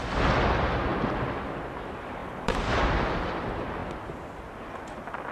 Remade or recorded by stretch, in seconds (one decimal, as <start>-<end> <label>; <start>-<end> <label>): 0.0-2.2 recorded; 2.2-2.8 remade; 2.8-5.3 recorded